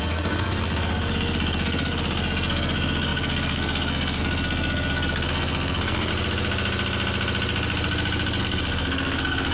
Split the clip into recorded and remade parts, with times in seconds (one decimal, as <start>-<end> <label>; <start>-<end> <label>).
0.0-6.1 remade; 6.1-8.4 recorded; 8.4-9.5 remade